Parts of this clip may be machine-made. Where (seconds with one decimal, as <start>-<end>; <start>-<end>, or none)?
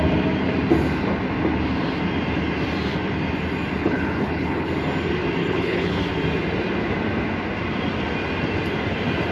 3.8-4.7; 5.4-6.0